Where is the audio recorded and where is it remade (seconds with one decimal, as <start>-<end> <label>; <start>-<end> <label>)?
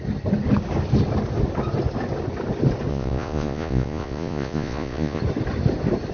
0.0-2.9 recorded; 2.9-5.2 remade; 5.2-6.1 recorded